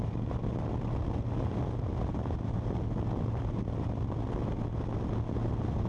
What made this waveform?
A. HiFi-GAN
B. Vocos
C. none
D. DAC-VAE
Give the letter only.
C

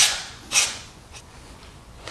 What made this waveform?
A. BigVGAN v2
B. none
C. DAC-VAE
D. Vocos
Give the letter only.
D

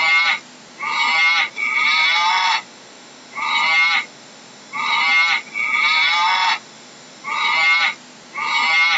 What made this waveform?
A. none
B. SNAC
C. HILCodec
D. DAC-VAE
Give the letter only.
A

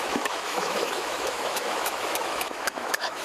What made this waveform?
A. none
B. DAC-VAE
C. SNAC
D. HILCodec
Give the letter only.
B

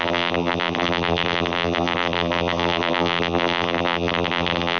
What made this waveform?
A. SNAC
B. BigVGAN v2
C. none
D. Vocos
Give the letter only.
B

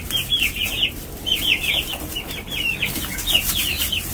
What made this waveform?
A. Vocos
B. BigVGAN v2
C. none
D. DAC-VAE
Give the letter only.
B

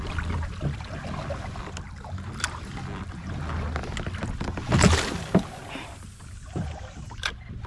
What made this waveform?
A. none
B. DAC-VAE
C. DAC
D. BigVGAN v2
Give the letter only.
A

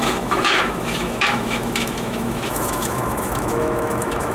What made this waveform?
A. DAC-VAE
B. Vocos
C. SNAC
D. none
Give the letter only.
A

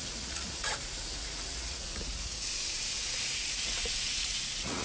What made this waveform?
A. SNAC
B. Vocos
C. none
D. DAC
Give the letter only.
B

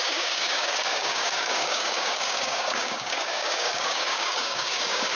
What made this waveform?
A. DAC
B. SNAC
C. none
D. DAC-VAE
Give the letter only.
A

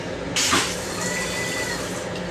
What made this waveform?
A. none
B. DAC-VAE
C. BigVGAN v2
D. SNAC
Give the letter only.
C